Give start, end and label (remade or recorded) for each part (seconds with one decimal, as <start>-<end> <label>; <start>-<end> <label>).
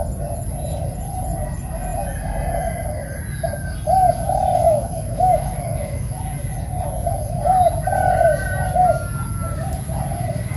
0.0-4.6 recorded; 4.6-6.2 remade; 6.2-10.6 recorded